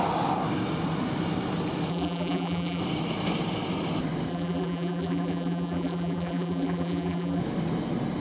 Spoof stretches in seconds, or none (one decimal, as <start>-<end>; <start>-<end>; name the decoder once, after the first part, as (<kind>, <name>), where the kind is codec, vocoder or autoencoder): 1.9-2.8 (vocoder, BigVGAN v2); 4.3-7.4